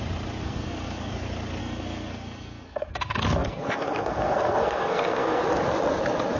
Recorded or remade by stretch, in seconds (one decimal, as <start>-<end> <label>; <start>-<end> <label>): 0.0-0.4 recorded; 0.4-1.1 remade; 1.1-1.6 recorded; 1.6-5.4 remade; 5.4-6.4 recorded